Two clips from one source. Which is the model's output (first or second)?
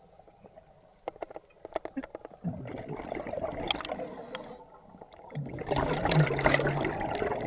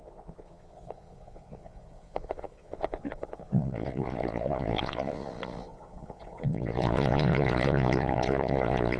second